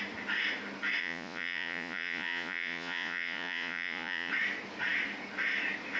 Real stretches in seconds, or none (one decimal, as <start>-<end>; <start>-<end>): 0.0-1.0; 4.3-6.0